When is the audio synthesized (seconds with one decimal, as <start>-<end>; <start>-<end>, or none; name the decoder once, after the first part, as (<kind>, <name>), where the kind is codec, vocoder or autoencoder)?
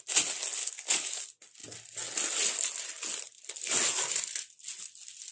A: 0.6-1.2 (codec, DAC)